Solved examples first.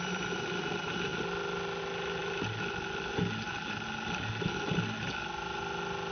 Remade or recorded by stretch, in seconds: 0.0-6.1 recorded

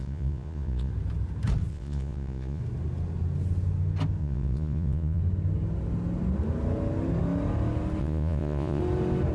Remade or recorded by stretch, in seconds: 0.0-0.9 remade; 0.9-1.7 recorded; 1.7-2.6 remade; 2.6-4.2 recorded; 4.2-5.2 remade; 5.2-8.0 recorded; 8.0-8.8 remade; 8.8-9.3 recorded

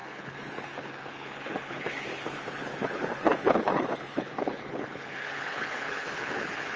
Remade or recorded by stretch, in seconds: 0.0-6.8 remade

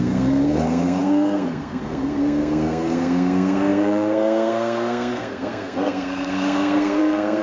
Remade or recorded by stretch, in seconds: 0.0-7.4 remade

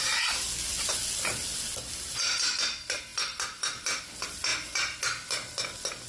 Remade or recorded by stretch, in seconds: 0.0-6.1 recorded